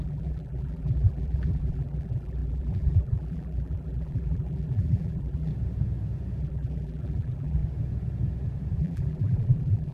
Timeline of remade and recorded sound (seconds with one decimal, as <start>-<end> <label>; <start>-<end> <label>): 0.0-5.5 remade; 5.5-6.4 recorded; 6.4-7.6 remade; 7.6-8.8 recorded; 8.8-9.9 remade